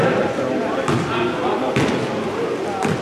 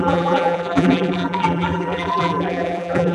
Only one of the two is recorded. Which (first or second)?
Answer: first